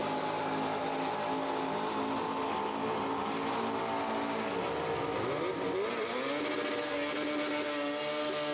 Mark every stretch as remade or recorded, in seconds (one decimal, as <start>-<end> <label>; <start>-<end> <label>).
0.0-8.5 recorded